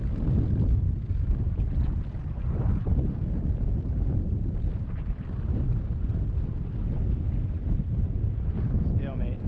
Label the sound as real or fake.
real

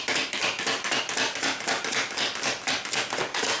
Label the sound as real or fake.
fake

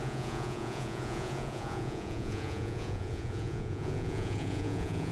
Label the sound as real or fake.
fake